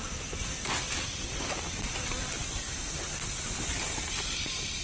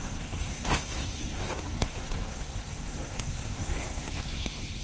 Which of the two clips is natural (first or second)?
first